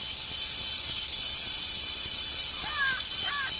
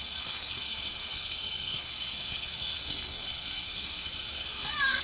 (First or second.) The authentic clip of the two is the first